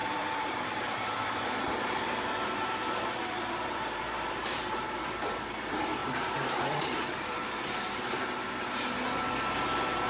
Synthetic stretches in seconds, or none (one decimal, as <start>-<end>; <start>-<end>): 0.0-5.0; 6.0-8.5